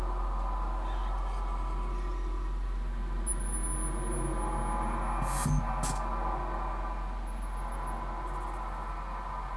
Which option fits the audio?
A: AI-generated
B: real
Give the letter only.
B